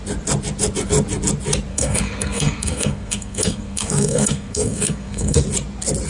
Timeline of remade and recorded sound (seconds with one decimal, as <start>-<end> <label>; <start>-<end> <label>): 0.0-1.7 recorded; 1.7-5.4 remade; 5.4-6.1 recorded